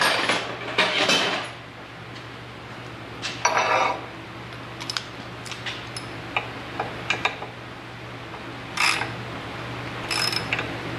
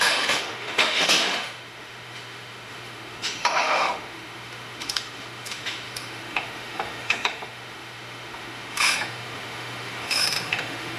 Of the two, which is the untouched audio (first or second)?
first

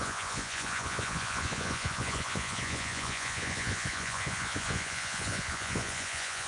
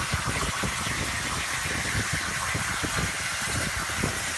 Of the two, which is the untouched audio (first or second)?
second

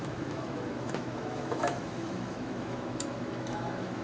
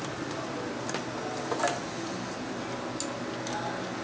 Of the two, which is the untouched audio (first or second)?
second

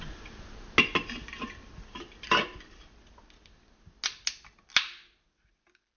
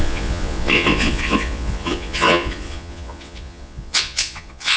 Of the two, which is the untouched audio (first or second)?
first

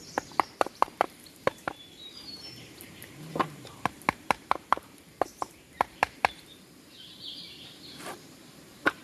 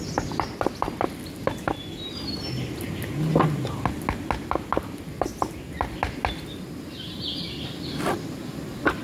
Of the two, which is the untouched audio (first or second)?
second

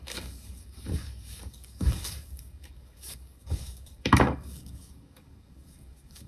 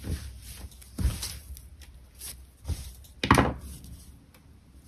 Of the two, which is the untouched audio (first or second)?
second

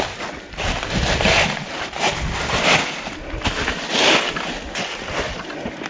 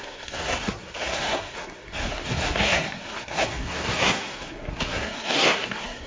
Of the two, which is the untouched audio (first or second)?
first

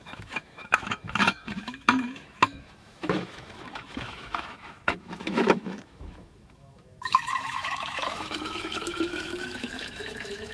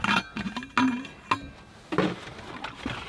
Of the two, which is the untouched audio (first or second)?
second